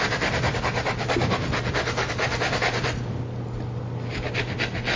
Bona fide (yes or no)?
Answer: yes